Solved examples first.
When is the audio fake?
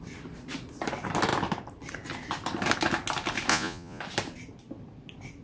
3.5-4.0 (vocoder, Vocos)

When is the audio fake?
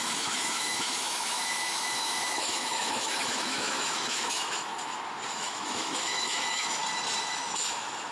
0.0-4.7 (autoencoder, DAC-VAE); 5.3-6.8; 7.3-8.1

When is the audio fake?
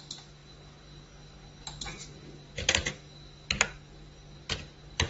none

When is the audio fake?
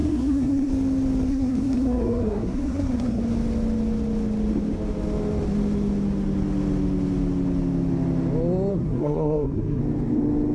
0.0-0.7 (codec, SNAC); 1.3-3.2; 8.7-9.8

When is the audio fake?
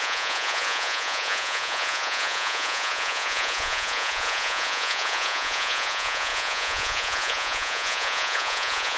0.0-9.0 (vocoder, Vocos)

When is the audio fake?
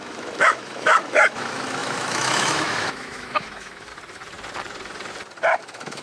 0.0-3.9 (autoencoder, DAC-VAE); 5.6-6.0